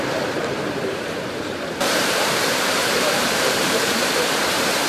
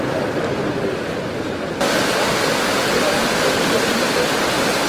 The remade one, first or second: first